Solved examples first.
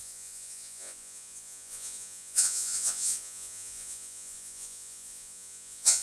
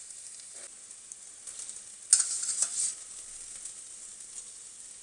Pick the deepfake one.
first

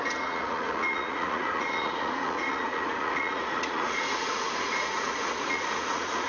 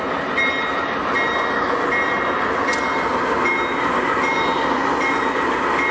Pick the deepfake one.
first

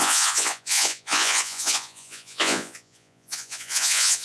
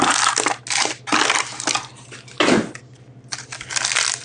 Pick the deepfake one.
first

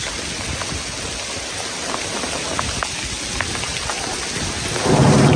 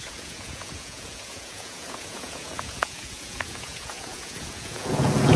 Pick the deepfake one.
second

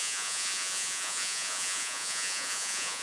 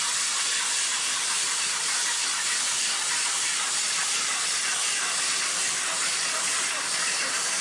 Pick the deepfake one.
first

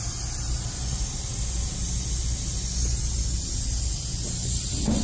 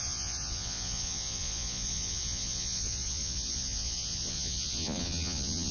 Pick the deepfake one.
second